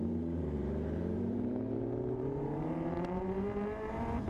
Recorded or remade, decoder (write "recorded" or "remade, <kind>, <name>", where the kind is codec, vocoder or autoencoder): remade, vocoder, BigVGAN v2